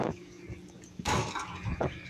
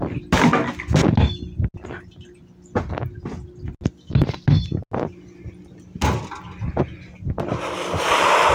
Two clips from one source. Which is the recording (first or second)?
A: second